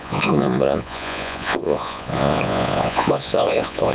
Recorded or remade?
remade